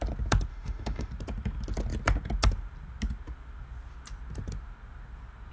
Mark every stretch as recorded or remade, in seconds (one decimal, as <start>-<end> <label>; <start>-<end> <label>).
0.0-0.5 recorded; 0.5-1.1 remade; 1.1-5.5 recorded